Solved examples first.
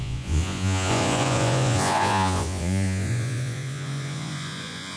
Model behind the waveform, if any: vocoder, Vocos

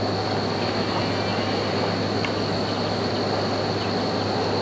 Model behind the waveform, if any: none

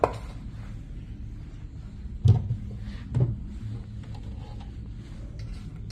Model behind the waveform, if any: none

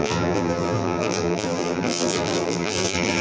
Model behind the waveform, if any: vocoder, BigVGAN v2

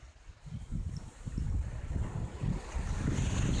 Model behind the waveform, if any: none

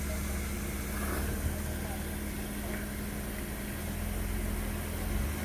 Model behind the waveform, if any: none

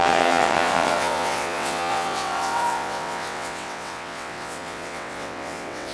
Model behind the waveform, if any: vocoder, WaveNeXt